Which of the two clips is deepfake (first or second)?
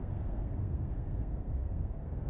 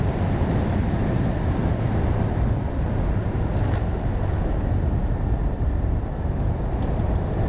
first